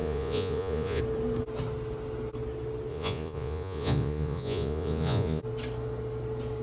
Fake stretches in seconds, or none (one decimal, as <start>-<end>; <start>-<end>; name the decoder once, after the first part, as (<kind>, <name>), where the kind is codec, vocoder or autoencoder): 0.0-1.0 (vocoder, Vocos); 2.9-5.4